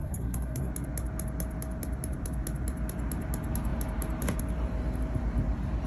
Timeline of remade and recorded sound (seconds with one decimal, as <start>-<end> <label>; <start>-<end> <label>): 0.0-0.7 remade; 0.7-5.9 recorded